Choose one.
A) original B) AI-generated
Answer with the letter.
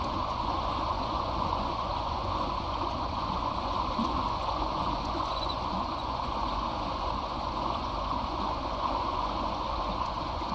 B